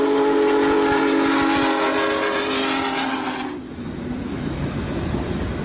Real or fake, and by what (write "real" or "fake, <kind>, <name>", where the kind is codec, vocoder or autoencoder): real